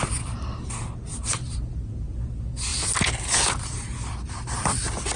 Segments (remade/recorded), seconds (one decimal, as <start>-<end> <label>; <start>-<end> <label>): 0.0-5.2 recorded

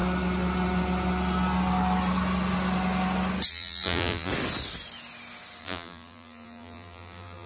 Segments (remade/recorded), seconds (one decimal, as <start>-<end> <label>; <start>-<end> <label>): 0.0-3.5 recorded; 3.5-4.3 remade; 4.3-5.6 recorded; 5.6-7.5 remade

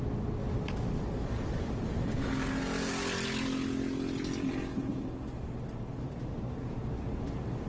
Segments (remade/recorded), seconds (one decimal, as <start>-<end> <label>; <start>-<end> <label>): 0.0-7.7 recorded

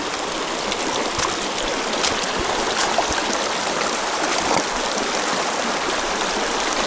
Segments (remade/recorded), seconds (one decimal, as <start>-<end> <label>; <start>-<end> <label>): 0.0-6.9 recorded

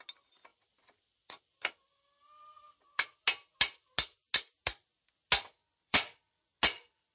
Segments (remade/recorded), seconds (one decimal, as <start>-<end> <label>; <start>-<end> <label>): 0.0-5.6 recorded; 5.6-6.2 remade; 6.2-7.1 recorded

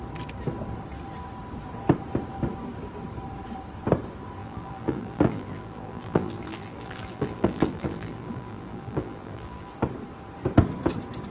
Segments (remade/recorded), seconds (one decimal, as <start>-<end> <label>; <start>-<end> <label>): 0.0-4.4 recorded; 4.4-9.7 remade; 9.7-11.3 recorded